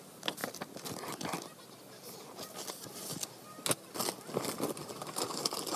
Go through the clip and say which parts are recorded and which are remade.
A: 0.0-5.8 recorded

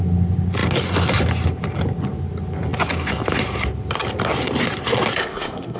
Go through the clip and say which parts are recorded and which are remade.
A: 0.0-5.2 recorded; 5.2-5.8 remade

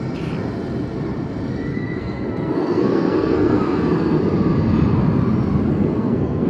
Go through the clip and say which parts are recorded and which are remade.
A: 0.0-1.7 recorded; 1.7-4.2 remade; 4.2-5.7 recorded; 5.7-6.5 remade